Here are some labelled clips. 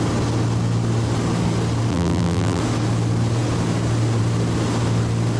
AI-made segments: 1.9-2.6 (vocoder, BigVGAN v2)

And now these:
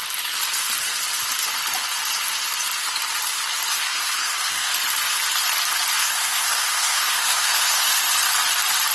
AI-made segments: 3.7-4.7 (codec, SNAC); 6.0-8.0

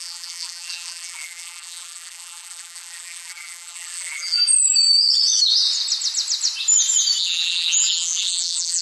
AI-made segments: 0.0-4.4 (vocoder, BigVGAN v2); 7.2-8.8

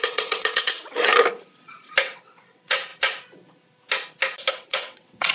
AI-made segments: 0.0-1.1 (vocoder, WaveNeXt); 2.0-2.9; 4.5-5.3